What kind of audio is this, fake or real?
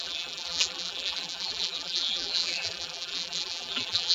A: fake